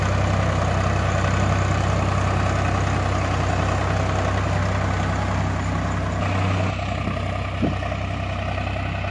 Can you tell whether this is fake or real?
real